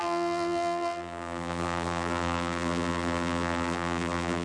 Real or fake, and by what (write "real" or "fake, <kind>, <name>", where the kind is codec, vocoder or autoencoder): fake, vocoder, BigVGAN v2